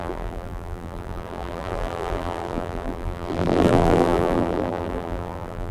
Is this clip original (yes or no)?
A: no